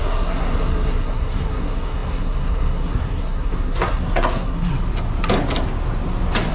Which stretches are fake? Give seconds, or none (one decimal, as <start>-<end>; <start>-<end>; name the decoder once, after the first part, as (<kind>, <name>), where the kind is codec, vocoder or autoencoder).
0.0-4.7 (codec, SNAC)